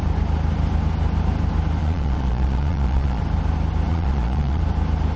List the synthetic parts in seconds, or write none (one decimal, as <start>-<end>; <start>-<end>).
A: 1.8-3.2; 3.9-4.6